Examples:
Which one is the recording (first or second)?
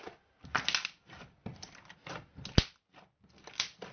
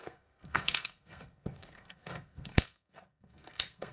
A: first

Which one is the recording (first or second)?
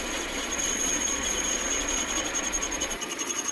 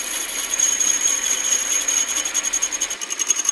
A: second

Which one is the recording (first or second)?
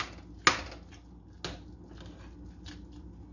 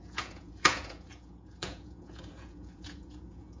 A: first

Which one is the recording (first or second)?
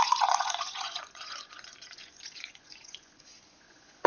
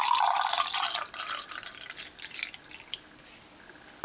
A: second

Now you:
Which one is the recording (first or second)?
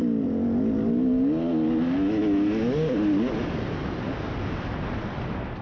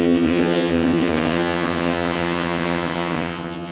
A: first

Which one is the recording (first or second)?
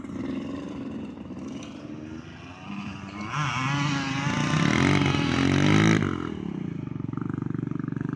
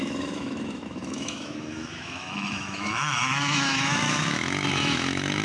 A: first